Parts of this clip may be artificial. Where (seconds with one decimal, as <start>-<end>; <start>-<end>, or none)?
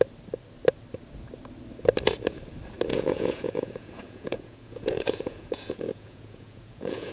2.9-7.1